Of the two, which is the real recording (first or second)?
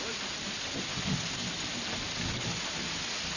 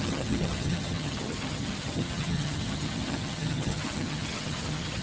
first